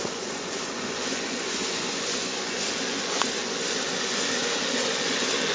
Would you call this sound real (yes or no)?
no